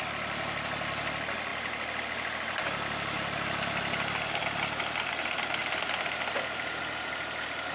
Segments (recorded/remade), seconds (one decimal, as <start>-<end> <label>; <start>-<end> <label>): 0.0-7.7 recorded